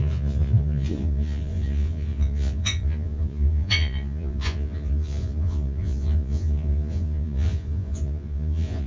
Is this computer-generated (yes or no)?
yes